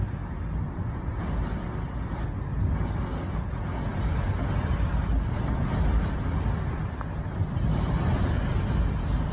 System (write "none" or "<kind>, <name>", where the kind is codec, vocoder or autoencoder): none